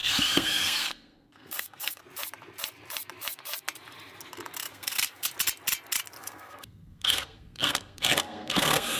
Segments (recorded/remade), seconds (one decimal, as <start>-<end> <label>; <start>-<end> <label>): 0.0-2.0 remade; 2.0-4.7 recorded; 4.7-5.3 remade; 5.3-6.2 recorded; 6.2-9.0 remade